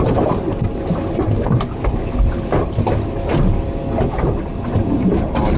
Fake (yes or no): no